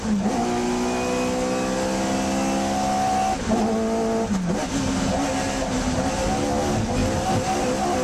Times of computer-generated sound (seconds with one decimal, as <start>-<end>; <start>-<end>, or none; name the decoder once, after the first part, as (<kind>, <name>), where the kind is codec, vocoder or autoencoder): none